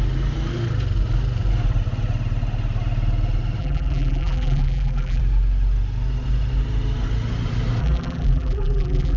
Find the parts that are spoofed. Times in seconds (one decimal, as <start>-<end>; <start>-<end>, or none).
3.6-5.2; 7.8-9.2